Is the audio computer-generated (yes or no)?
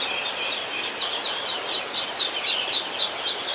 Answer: no